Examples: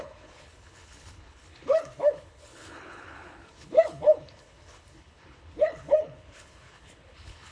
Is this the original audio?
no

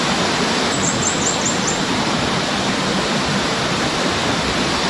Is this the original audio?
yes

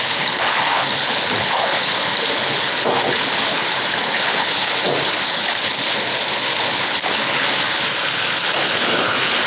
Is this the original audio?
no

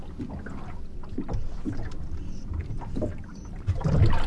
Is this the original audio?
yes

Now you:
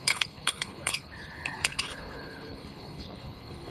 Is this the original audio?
no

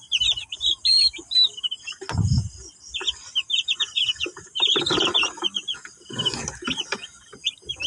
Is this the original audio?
yes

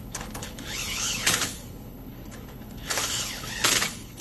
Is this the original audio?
no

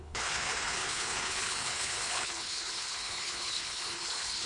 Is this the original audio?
no